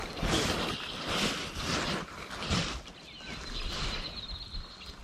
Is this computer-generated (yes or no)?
no